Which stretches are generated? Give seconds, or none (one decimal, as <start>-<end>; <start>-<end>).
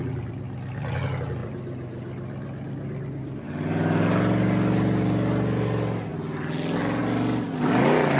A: none